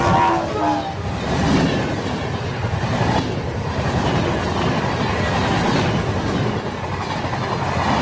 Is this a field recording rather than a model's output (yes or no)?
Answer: yes